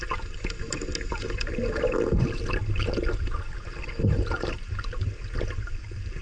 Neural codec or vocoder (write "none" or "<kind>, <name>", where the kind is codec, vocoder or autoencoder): none